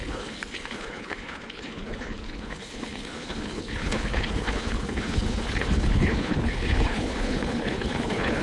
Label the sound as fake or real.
fake